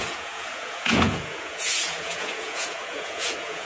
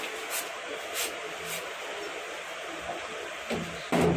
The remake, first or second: first